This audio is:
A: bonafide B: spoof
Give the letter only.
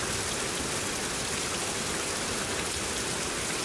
A